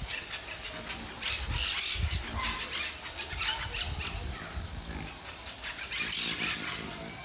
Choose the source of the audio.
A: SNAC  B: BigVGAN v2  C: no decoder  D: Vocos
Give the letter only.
C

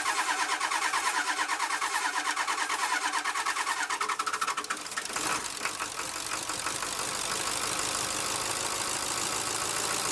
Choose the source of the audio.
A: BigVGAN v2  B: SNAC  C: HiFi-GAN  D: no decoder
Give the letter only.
D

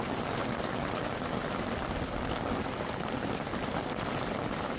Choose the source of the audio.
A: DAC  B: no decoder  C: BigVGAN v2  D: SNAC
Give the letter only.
B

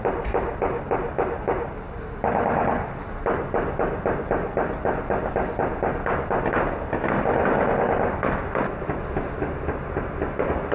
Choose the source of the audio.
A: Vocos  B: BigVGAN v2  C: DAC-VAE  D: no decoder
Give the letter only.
D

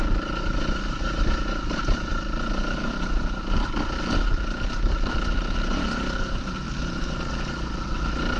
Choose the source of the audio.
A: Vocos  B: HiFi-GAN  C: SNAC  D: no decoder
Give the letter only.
D